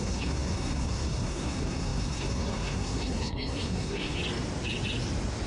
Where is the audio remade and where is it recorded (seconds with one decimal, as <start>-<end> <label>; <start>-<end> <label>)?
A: 0.0-4.2 remade; 4.2-5.5 recorded